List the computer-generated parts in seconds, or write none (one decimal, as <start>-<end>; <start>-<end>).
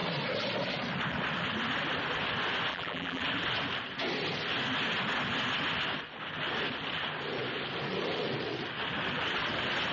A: 2.7-3.2